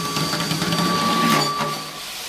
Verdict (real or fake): real